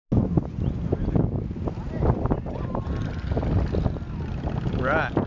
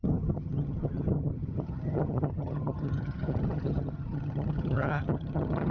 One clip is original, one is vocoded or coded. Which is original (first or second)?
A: first